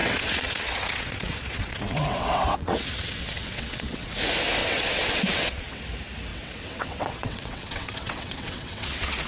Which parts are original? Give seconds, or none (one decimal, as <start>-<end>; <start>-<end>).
4.1-4.6; 5.8-6.3